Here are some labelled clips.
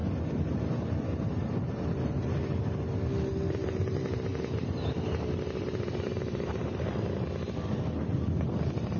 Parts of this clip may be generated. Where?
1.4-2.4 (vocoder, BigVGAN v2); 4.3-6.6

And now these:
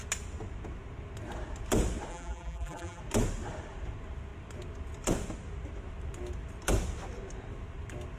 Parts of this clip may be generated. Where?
2.1-3.0 (vocoder, BigVGAN v2)